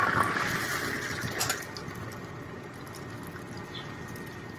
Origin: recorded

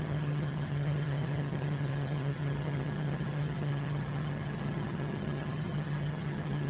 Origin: remade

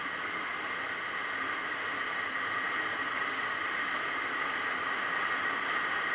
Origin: remade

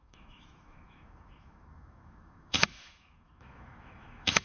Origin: remade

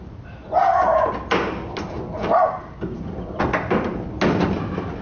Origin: recorded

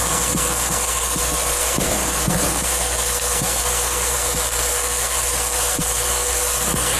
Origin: remade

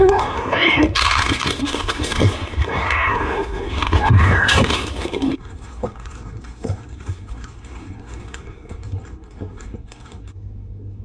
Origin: remade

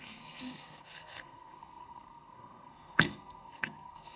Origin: remade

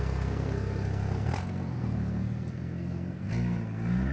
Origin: remade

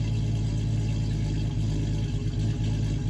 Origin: recorded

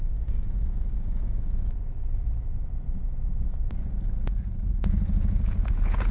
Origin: remade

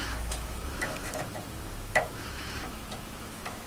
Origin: remade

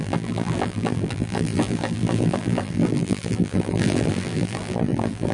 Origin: remade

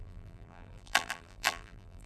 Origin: remade